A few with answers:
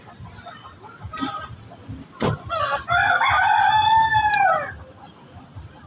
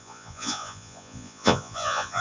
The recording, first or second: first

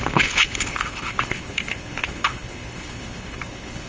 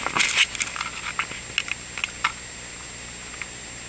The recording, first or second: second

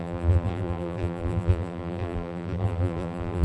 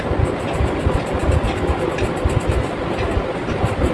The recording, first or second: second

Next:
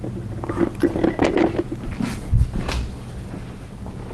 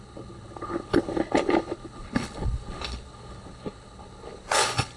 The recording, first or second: first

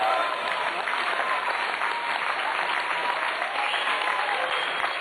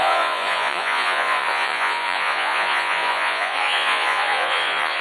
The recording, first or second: first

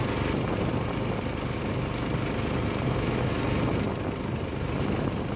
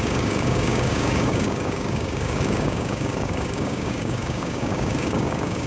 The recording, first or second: first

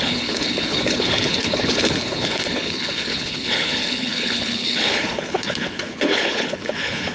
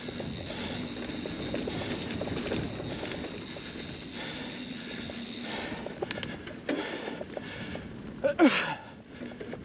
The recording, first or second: second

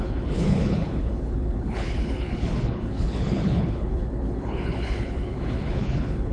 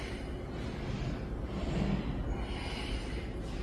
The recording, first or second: second